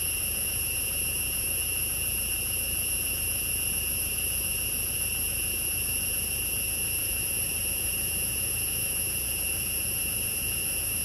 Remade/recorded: remade